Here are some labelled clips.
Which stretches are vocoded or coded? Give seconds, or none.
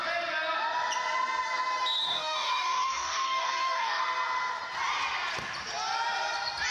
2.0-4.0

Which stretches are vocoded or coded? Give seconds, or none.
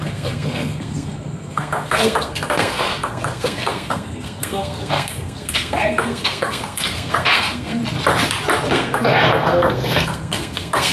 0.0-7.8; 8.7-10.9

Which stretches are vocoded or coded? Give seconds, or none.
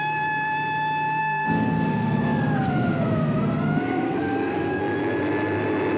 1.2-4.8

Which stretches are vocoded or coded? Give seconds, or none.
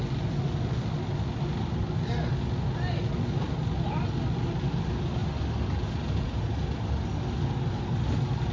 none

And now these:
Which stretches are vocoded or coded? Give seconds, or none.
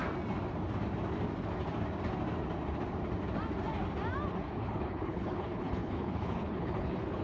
4.3-7.2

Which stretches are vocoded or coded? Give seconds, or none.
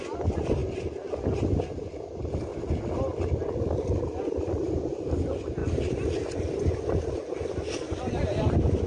none